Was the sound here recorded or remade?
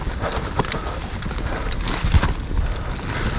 recorded